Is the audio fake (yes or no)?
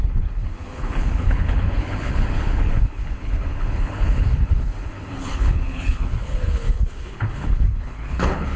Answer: yes